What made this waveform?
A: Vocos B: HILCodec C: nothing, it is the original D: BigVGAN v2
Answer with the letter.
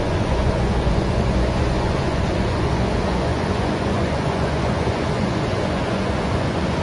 A